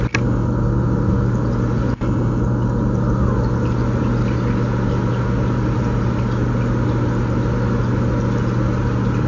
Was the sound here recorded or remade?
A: recorded